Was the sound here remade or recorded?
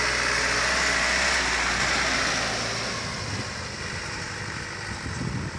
recorded